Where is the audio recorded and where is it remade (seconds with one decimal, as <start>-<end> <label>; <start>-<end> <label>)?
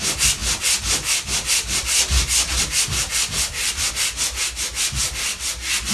0.0-0.4 recorded; 0.4-3.9 remade; 3.9-5.9 recorded